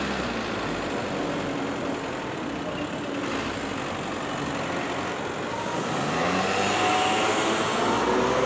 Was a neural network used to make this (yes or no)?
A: no